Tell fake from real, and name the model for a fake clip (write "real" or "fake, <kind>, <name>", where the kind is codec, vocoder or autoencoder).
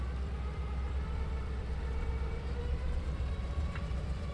fake, vocoder, BigVGAN v2